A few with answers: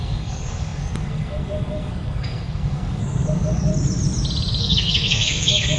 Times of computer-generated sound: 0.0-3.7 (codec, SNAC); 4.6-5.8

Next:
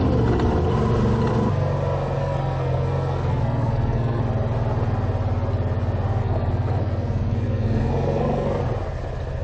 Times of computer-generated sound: 2.2-4.2 (codec, SNAC); 6.2-8.6